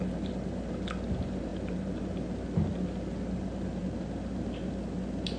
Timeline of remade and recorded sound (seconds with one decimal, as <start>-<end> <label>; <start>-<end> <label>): 0.0-5.4 recorded